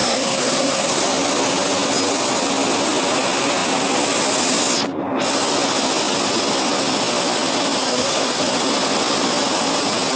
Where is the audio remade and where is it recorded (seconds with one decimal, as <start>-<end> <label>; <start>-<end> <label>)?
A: 0.0-1.0 remade; 1.0-7.8 recorded; 7.8-8.4 remade; 8.4-10.2 recorded